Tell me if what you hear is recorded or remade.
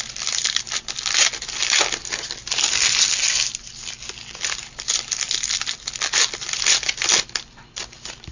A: recorded